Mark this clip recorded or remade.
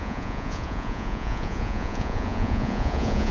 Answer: remade